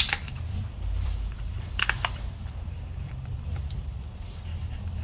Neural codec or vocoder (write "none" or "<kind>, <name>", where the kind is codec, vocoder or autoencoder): vocoder, BigVGAN v2